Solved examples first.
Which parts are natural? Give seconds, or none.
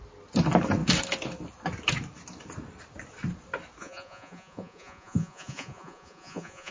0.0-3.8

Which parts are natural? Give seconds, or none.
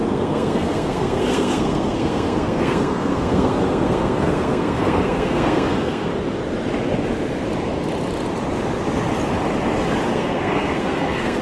6.1-10.1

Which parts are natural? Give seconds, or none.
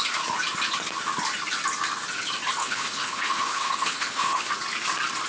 0.0-2.6; 4.5-5.3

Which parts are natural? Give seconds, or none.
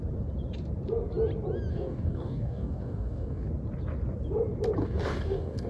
0.0-1.7; 3.5-4.8